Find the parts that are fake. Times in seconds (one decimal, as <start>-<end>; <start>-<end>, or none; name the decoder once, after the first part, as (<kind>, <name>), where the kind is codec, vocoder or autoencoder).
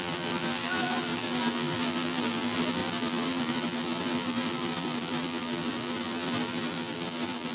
0.0-7.5 (vocoder, BigVGAN v2)